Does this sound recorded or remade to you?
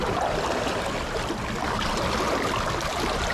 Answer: recorded